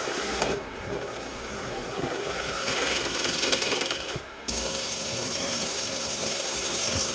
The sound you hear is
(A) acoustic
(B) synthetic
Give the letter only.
B